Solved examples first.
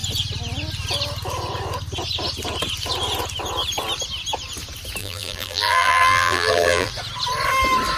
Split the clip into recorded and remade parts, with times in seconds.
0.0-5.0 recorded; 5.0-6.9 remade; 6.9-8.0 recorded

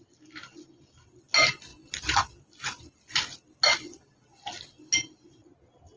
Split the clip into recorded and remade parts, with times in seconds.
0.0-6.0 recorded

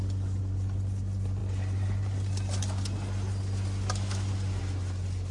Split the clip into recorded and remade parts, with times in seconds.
0.0-5.3 recorded